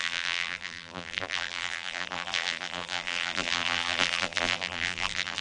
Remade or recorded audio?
remade